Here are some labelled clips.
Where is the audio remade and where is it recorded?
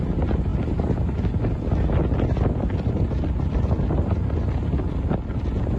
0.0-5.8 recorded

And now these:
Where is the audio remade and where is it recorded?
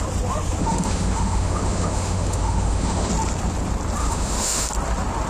0.0-0.6 recorded; 0.6-3.1 remade; 3.1-4.0 recorded; 4.0-4.7 remade; 4.7-5.3 recorded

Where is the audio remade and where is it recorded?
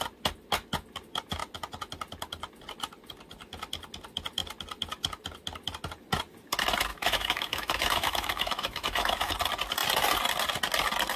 0.0-6.9 recorded; 6.9-9.3 remade; 9.3-11.2 recorded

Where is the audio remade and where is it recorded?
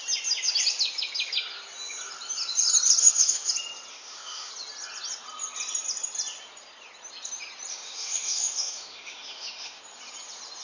0.0-3.0 recorded; 3.0-3.5 remade; 3.5-3.9 recorded; 3.9-4.5 remade; 4.5-7.7 recorded; 7.7-9.8 remade; 9.8-10.6 recorded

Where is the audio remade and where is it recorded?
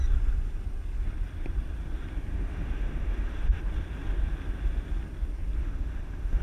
0.0-2.3 recorded; 2.3-3.6 remade; 3.6-5.6 recorded; 5.6-6.4 remade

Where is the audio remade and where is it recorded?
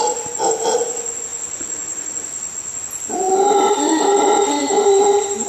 0.0-5.5 recorded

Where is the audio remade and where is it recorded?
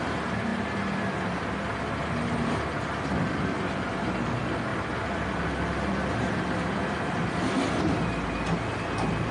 0.0-9.3 recorded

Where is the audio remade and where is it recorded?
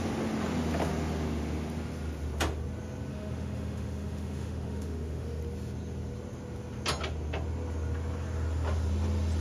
0.0-3.1 recorded; 3.1-5.4 remade; 5.4-9.4 recorded